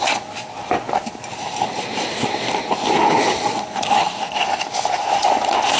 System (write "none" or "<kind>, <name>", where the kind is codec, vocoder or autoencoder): none